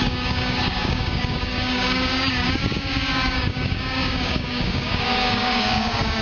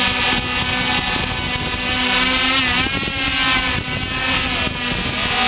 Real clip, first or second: second